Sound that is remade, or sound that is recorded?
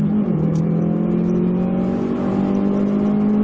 recorded